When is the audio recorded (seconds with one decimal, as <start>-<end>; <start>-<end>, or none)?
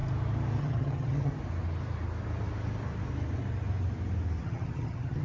0.0-0.6; 1.3-4.4